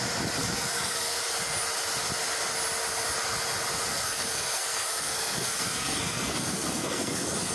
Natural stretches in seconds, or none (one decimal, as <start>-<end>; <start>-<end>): 0.0-0.4; 1.2-3.9